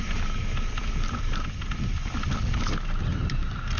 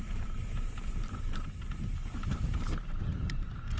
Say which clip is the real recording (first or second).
first